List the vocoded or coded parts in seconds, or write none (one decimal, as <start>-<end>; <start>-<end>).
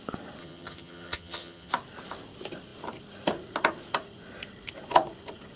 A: 0.4-1.7